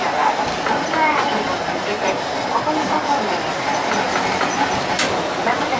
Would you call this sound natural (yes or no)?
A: yes